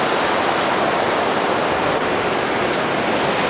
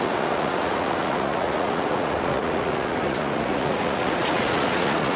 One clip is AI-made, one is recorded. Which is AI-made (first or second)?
second